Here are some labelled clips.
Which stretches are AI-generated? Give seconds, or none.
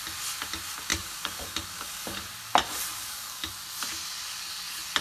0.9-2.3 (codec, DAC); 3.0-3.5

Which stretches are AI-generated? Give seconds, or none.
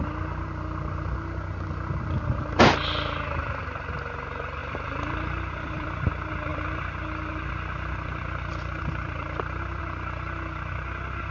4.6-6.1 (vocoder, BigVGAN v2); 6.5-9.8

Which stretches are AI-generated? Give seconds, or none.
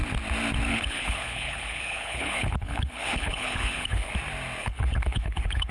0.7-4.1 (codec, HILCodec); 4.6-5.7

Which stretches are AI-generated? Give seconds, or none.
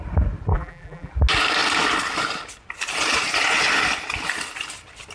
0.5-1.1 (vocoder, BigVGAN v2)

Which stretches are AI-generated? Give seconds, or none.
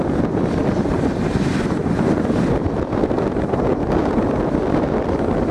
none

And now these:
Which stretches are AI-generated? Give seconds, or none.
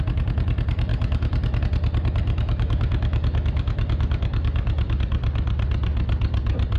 0.9-1.6 (autoencoder, DAC-VAE); 2.2-5.0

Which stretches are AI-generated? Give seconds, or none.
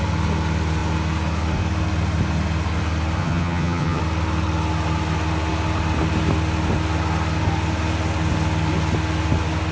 3.2-4.0 (vocoder, HiFi-GAN)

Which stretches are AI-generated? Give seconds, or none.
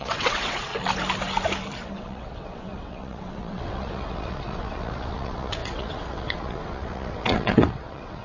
0.0-0.7 (vocoder, WaveNeXt); 1.8-8.2